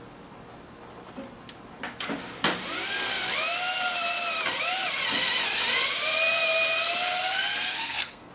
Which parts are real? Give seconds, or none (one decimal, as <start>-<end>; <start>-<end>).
0.0-7.7